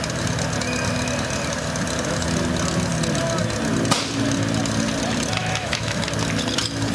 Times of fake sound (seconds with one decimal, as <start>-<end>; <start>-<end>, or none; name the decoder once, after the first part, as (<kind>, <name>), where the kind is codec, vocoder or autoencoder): 5.4-6.0 (autoencoder, DAC-VAE)